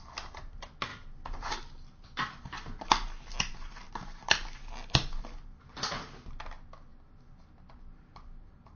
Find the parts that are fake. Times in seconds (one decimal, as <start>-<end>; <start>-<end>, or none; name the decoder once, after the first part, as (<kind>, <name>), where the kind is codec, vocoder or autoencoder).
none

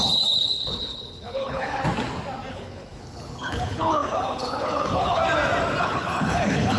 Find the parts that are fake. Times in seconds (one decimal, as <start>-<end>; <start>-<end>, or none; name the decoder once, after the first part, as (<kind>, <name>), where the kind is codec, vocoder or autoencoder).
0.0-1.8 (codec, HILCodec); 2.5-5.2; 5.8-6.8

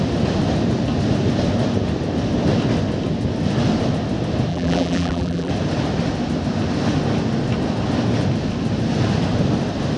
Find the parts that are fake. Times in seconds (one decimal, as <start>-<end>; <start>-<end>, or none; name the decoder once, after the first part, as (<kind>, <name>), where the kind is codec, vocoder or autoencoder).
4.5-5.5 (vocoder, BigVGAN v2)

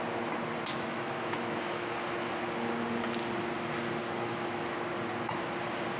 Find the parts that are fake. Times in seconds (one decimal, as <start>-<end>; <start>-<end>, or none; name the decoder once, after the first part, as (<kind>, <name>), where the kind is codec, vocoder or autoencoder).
0.7-1.9 (autoencoder, DAC-VAE); 4.0-4.7